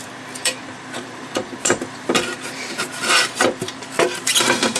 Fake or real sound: fake